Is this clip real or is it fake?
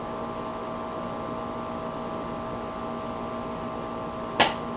real